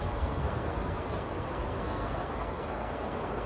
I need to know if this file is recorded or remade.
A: remade